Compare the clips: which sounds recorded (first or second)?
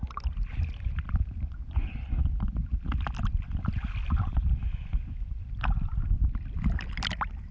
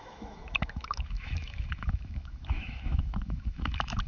first